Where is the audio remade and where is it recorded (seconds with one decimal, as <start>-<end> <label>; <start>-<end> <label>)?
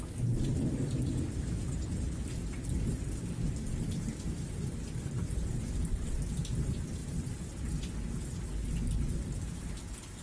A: 0.0-10.2 recorded